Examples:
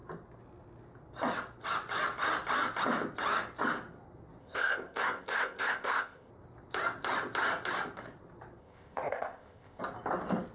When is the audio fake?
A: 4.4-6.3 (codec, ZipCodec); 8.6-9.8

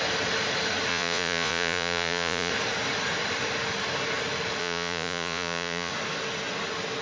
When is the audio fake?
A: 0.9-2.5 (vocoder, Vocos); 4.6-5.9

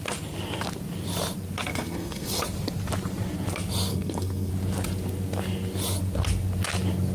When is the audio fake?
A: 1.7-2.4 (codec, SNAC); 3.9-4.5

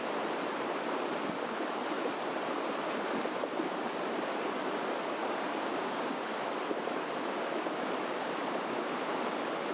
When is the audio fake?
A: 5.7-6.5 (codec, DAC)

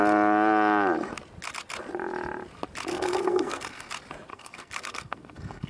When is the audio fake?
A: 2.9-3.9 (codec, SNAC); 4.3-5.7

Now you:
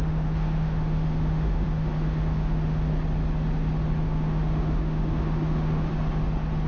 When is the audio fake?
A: 0.0-2.9 (autoencoder, DAC-VAE); 4.0-5.9